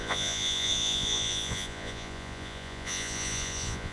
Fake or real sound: fake